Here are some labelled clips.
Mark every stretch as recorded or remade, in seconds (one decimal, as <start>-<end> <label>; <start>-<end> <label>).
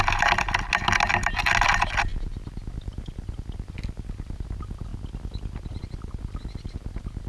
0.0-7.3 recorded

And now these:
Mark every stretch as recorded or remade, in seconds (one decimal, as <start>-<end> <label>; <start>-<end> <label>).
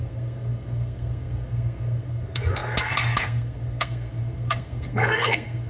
0.0-5.7 remade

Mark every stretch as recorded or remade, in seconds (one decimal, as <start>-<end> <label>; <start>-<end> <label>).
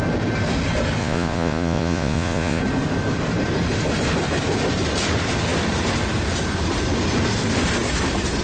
0.0-1.0 recorded; 1.0-2.6 remade; 2.6-8.4 recorded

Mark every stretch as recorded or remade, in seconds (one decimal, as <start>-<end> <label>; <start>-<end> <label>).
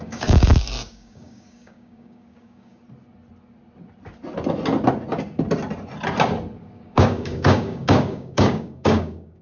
0.0-2.8 remade; 2.8-6.6 recorded; 6.6-9.4 remade